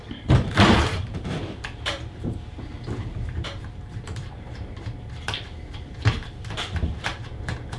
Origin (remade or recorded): remade